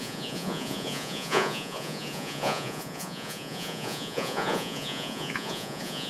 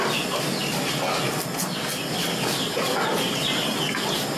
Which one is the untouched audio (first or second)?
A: second